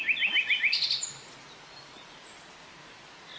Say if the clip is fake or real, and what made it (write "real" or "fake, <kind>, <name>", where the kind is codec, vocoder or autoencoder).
real